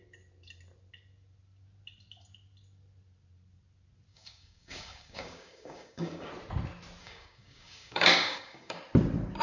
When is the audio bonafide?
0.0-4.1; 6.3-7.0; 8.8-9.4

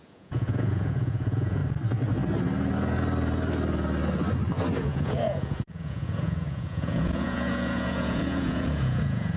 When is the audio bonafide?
1.6-4.8